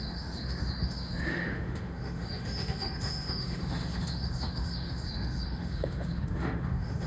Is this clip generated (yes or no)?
yes